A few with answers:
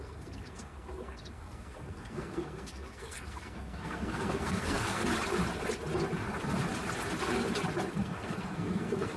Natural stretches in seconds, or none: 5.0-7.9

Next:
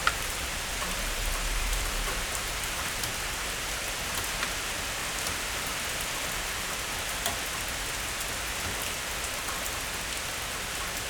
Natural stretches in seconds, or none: 3.0-11.1

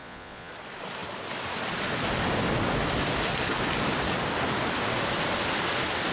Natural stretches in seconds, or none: 0.5-6.1

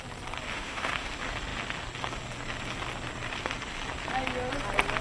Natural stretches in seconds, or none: 0.0-0.5; 1.1-5.0

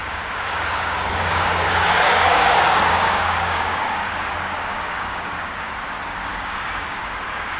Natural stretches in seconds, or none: 4.3-4.7; 5.7-6.3